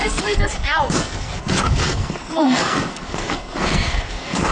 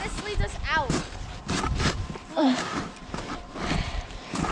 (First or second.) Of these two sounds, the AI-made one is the first